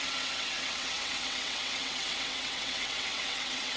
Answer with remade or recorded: remade